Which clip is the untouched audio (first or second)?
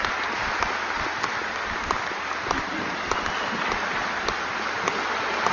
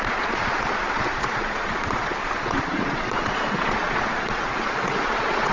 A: first